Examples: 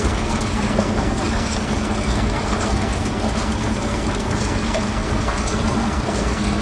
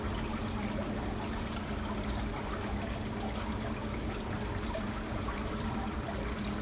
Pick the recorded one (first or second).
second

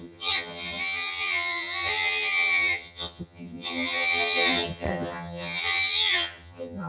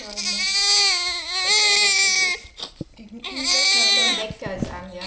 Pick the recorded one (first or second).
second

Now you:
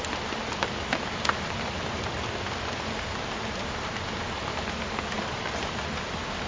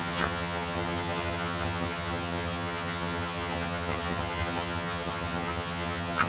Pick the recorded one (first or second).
first